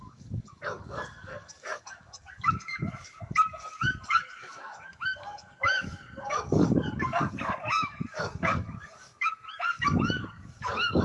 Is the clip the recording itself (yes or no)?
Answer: no